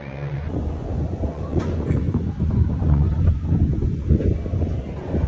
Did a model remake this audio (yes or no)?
yes